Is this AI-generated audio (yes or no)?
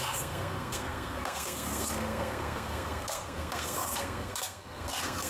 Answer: yes